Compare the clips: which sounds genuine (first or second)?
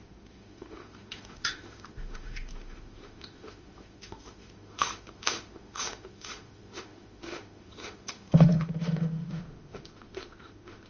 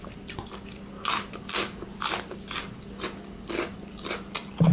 second